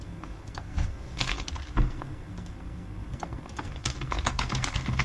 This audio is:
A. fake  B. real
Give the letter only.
A